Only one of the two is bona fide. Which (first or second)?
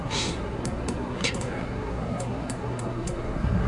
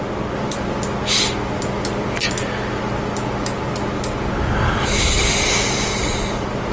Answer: second